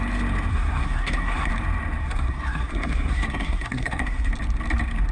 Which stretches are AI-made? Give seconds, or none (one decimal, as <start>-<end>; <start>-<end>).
0.5-1.5; 2.0-4.3